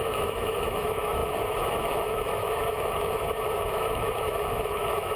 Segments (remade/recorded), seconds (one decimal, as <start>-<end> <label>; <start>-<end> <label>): 0.0-5.2 remade

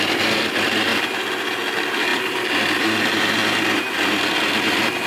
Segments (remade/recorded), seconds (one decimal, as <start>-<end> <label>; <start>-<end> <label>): 0.0-5.1 recorded

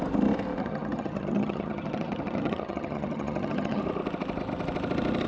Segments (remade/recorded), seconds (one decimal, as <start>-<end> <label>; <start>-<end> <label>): 0.0-0.6 recorded; 0.6-3.8 remade; 3.8-5.3 recorded